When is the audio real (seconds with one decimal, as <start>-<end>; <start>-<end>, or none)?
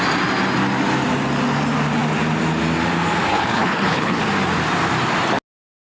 0.0-3.3; 4.2-6.0